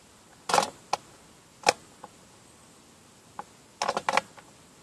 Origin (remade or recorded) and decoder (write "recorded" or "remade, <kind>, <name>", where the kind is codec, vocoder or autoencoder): recorded